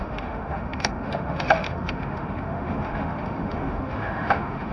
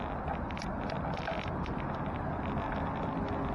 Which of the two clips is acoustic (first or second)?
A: second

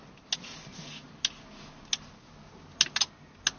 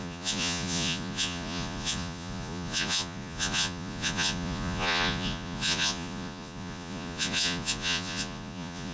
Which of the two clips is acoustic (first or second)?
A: first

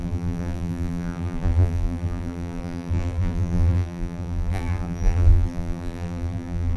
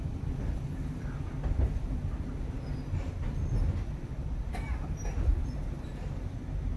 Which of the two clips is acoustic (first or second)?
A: second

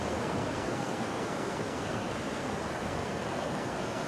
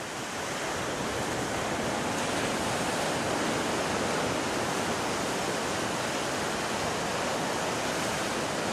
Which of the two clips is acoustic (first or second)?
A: second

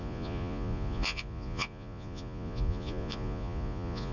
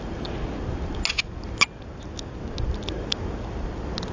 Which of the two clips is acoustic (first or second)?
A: second